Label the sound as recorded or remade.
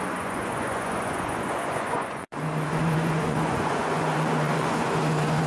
remade